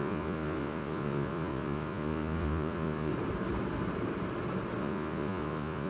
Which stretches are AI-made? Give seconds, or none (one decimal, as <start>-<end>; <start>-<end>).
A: 0.0-3.1; 4.8-5.9